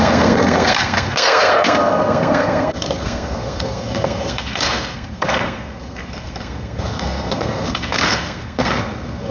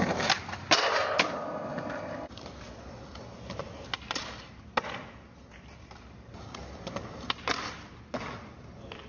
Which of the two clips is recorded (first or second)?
second